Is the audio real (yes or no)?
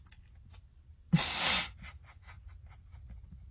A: yes